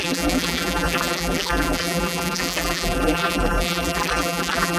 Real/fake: fake